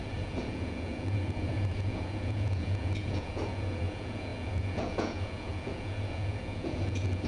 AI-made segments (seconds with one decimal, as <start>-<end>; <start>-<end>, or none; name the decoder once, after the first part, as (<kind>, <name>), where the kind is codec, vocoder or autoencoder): 0.0-7.3 (vocoder, Vocos)